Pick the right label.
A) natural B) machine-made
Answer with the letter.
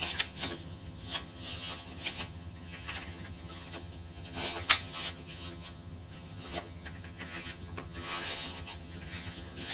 B